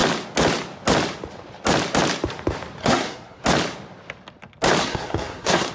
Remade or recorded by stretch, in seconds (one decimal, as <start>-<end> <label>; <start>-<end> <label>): 0.0-2.8 recorded; 2.8-3.4 remade; 3.4-4.8 recorded; 4.8-5.7 remade